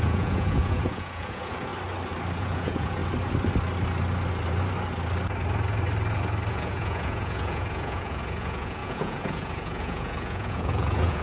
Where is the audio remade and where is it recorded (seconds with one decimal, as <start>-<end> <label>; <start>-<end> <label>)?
0.0-1.7 remade; 1.7-2.4 recorded; 2.4-3.0 remade; 3.0-6.5 recorded; 6.5-11.2 remade